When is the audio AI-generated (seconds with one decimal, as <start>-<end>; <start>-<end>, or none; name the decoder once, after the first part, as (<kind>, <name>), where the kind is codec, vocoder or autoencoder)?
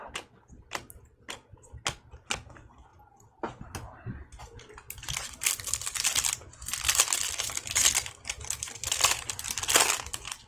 2.9-4.6 (vocoder, BigVGAN v2)